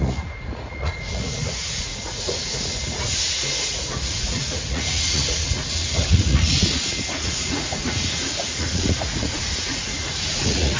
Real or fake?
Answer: fake